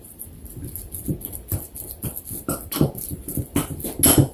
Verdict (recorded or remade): recorded